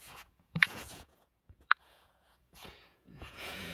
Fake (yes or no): yes